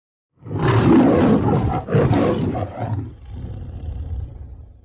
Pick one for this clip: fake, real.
fake